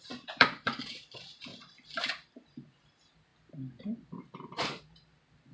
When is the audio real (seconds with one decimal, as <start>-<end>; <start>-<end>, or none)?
1.5-2.0; 3.3-4.2